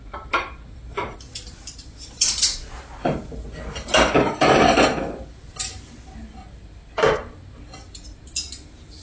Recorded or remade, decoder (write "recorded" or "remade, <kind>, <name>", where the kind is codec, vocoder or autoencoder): recorded